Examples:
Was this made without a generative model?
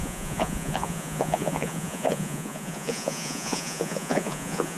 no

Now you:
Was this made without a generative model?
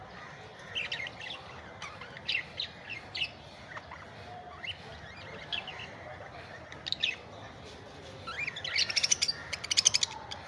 yes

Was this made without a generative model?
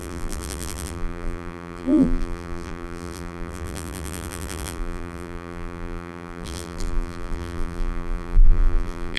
no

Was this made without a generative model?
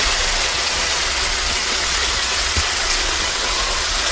no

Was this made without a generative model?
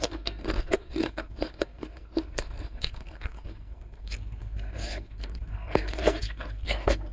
no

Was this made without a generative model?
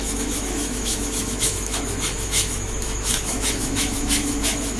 no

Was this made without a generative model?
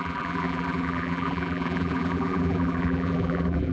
no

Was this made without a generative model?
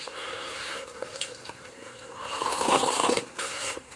no